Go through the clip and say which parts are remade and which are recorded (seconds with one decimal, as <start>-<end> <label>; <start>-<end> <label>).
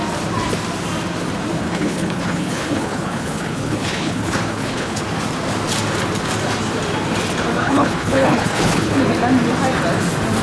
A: 0.0-1.6 recorded; 1.6-5.0 remade; 5.0-7.6 recorded; 7.6-9.0 remade; 9.0-10.4 recorded